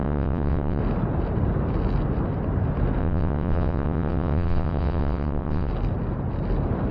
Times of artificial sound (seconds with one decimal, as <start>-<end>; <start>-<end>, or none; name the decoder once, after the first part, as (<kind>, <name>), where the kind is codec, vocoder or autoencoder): 0.0-0.8 (vocoder, WaveNeXt); 3.0-5.7